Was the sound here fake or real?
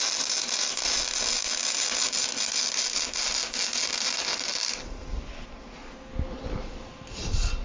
real